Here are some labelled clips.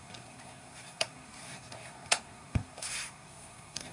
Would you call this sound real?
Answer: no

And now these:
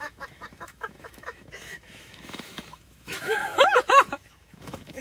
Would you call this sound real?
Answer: no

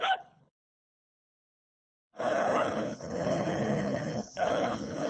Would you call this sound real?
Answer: no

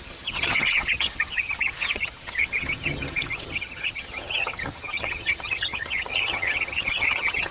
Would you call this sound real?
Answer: no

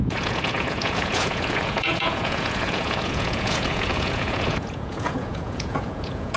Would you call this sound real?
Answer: no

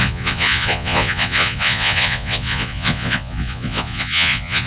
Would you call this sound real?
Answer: no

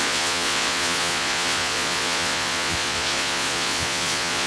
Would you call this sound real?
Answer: no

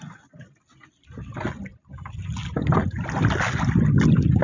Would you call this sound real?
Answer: yes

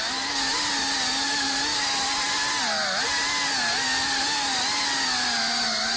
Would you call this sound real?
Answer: yes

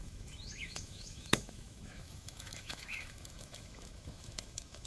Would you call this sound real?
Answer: no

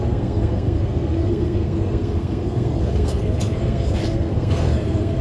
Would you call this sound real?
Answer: no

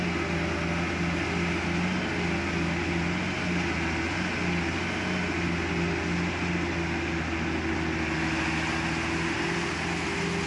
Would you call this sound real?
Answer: yes